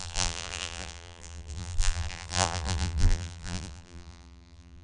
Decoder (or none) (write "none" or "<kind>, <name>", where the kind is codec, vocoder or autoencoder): vocoder, BigVGAN v2